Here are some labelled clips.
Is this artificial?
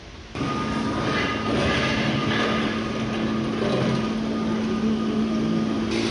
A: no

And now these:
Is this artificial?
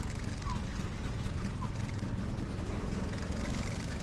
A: no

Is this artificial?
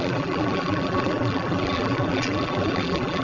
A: yes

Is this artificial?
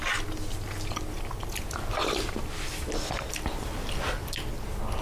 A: no